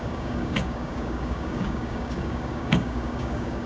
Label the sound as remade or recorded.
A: remade